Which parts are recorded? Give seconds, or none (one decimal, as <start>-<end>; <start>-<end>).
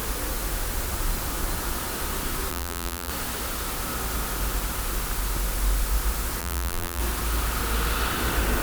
0.0-2.5; 3.1-6.4; 7.0-8.6